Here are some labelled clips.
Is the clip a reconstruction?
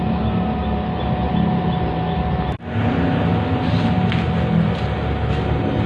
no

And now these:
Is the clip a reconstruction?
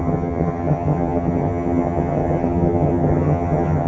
yes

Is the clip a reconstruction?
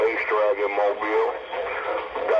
no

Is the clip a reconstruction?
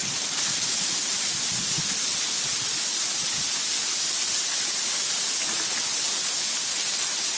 no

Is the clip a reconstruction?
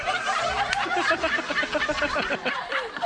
no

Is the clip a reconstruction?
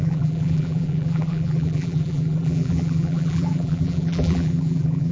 yes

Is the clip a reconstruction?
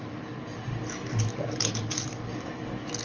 no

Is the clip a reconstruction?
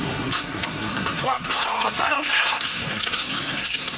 yes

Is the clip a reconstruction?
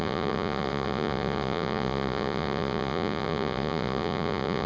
yes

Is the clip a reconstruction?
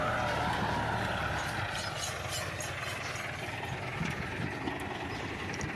no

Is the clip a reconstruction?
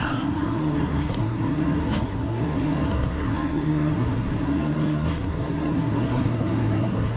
yes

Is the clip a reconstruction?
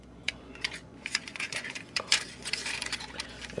yes